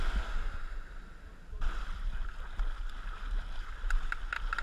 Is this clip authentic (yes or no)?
yes